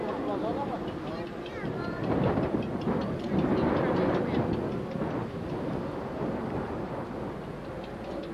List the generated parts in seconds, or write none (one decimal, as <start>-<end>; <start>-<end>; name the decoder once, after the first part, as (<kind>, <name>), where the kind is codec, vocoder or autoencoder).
0.5-3.3 (vocoder, BigVGAN v2)